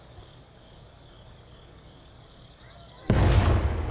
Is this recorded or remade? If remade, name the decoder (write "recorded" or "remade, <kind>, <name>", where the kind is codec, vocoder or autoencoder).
remade, codec, DAC